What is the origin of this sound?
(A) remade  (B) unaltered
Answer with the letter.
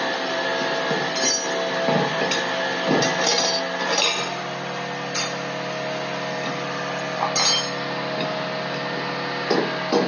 B